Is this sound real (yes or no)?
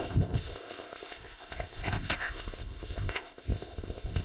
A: no